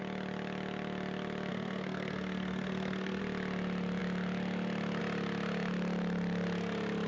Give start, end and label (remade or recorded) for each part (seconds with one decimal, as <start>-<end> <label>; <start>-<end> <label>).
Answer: 0.0-1.5 recorded; 1.5-3.2 remade; 3.2-7.1 recorded